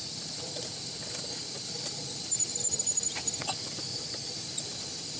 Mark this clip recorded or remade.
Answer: remade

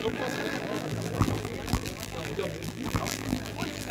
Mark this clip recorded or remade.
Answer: remade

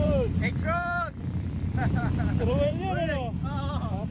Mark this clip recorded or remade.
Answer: remade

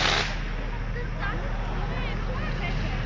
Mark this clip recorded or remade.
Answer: recorded